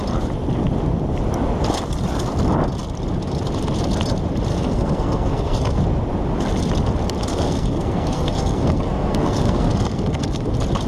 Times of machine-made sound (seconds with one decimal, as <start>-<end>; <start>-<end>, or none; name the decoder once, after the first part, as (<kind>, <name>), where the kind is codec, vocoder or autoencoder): 4.5-5.8 (codec, SNAC); 7.3-10.5